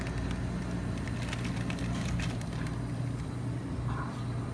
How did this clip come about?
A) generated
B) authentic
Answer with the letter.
B